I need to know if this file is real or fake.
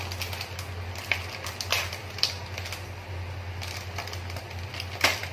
real